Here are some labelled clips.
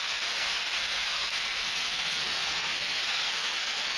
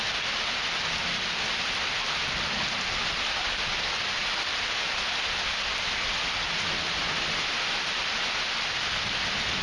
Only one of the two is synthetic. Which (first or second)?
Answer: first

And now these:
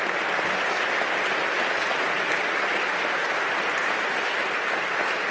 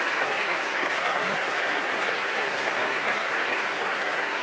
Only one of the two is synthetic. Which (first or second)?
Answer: second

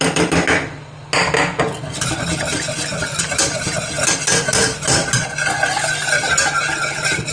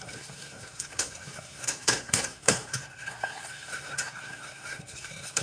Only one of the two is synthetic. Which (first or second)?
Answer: second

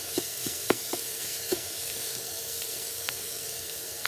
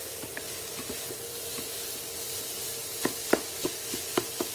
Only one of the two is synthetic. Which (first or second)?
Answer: first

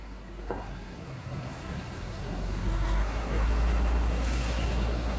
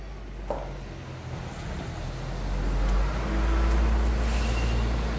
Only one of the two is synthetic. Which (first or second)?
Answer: first